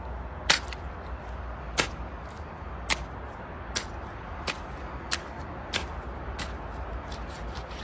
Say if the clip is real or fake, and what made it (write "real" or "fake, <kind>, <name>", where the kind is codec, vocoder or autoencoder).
real